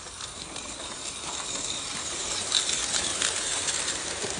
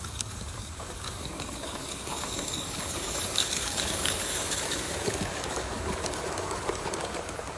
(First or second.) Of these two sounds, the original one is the first